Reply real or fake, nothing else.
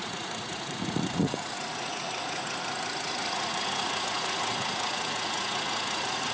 fake